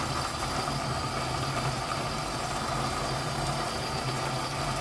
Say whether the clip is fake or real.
real